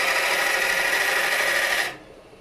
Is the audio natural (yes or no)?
yes